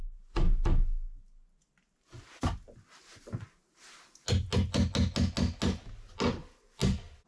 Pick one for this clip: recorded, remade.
recorded